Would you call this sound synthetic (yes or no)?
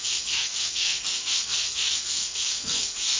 yes